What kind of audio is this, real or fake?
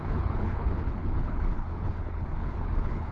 fake